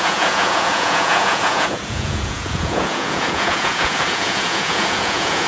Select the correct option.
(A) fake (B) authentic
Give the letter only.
A